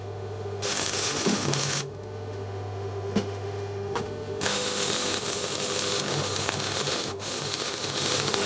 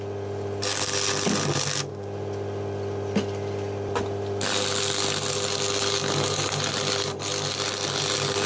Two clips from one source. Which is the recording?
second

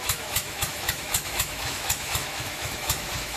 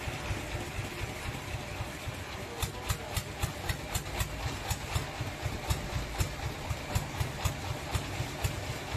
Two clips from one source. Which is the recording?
second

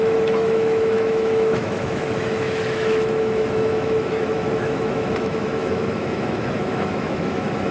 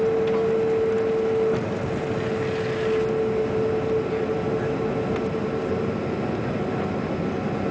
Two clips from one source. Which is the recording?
second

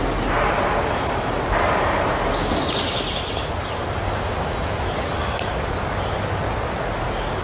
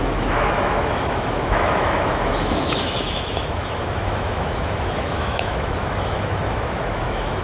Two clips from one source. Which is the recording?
first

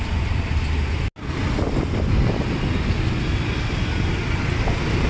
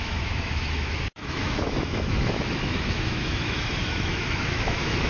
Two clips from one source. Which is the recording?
first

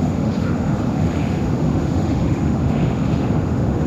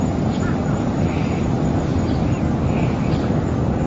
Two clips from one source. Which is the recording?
second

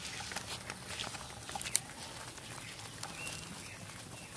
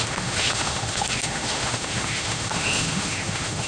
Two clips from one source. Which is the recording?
first